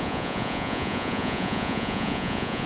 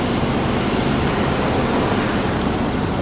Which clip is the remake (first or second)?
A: first